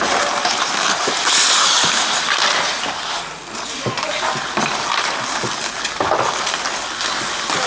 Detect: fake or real real